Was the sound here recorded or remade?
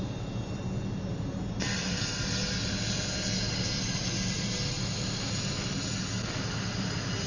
recorded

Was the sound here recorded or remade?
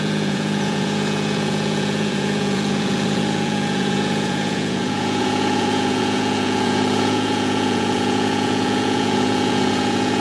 remade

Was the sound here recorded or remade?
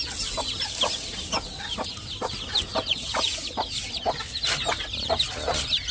recorded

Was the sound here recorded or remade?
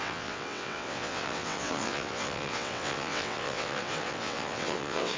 remade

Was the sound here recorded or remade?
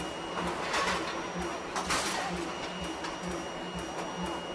recorded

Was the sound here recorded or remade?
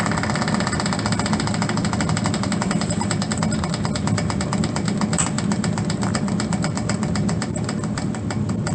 remade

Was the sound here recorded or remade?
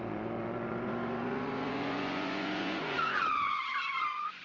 remade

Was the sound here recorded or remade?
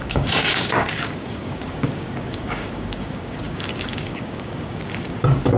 remade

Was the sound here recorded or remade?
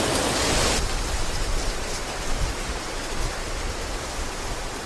recorded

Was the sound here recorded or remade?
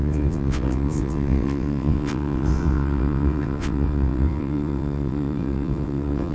remade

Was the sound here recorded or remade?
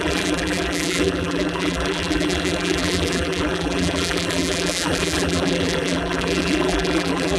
remade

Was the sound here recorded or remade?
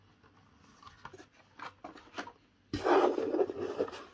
recorded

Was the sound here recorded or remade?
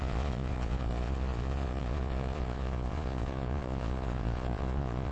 remade